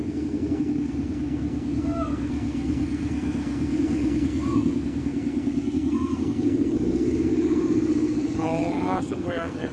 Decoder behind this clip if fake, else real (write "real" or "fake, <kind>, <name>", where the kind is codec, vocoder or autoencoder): fake, codec, SNAC